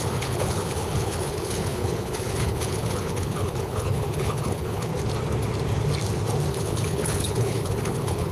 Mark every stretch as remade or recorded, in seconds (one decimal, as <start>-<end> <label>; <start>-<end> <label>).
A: 0.0-4.9 remade; 4.9-6.5 recorded; 6.5-8.3 remade